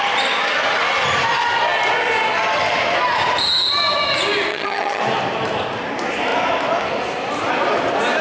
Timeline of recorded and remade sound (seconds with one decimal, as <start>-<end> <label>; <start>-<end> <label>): 0.0-4.5 recorded; 4.5-5.0 remade; 5.0-8.2 recorded